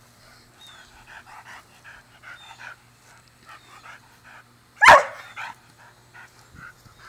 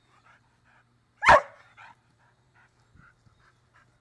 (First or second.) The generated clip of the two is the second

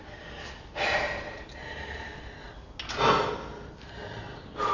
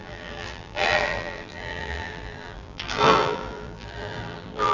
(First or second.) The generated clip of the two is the second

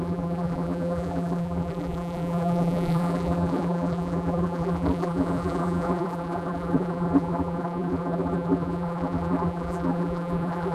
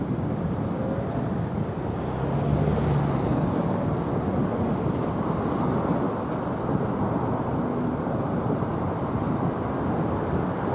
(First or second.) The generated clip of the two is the first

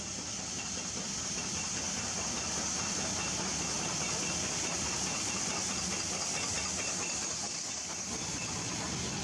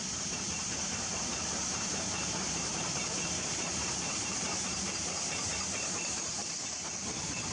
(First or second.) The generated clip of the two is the second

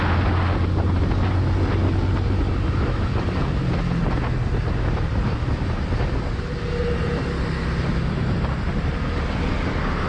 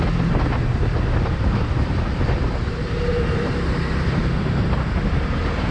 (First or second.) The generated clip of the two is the second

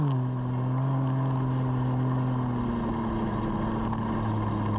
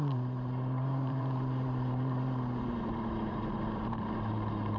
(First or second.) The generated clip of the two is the second